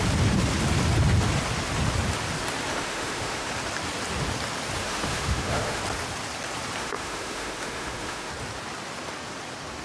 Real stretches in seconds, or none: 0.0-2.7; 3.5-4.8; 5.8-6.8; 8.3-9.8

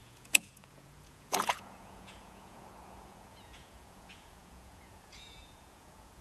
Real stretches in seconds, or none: none